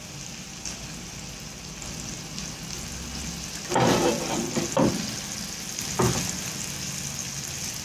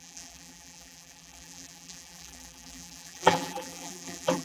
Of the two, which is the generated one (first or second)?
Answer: second